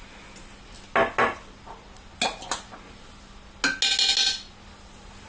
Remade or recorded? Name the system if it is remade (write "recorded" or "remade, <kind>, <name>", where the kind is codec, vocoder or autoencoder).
recorded